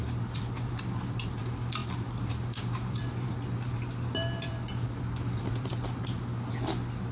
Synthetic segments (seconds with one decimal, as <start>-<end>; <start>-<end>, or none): 0.0-1.4; 1.8-5.7